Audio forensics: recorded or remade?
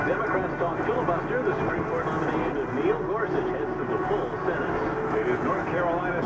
recorded